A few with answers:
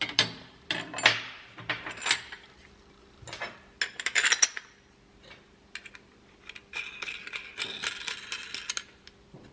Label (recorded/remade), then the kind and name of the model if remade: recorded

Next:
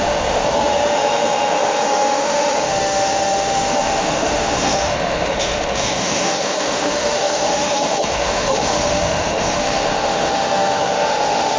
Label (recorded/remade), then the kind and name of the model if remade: remade, autoencoder, DAC-VAE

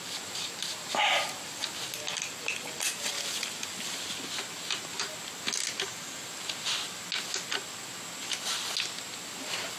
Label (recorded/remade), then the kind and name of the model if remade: recorded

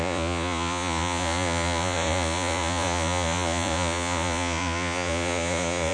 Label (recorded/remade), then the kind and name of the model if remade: remade, vocoder, Vocos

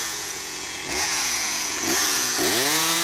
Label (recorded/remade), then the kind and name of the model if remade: remade, vocoder, Vocos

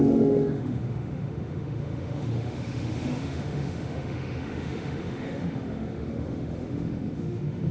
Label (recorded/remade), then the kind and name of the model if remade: remade, autoencoder, DAC-VAE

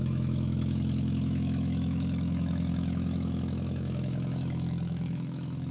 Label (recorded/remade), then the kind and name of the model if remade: remade, autoencoder, DAC-VAE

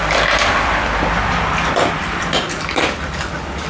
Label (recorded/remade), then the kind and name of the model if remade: remade, vocoder, BigVGAN v2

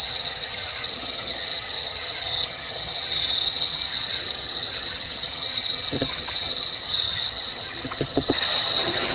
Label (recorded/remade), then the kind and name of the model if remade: remade, vocoder, HiFi-GAN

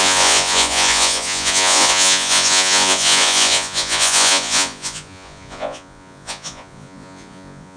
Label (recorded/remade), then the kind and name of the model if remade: remade, vocoder, Vocos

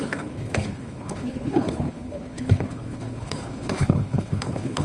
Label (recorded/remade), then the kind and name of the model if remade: remade, codec, HILCodec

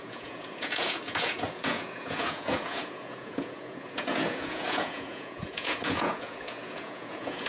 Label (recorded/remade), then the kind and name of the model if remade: remade, vocoder, Vocos